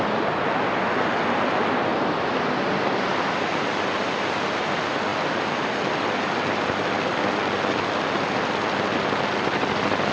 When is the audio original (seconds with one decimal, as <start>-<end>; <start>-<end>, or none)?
0.0-10.1